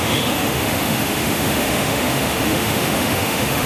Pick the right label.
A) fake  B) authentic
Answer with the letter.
A